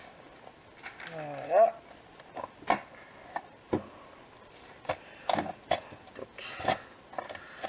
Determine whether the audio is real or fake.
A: real